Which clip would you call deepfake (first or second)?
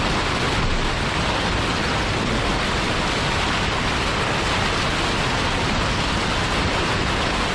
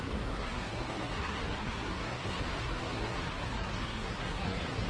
second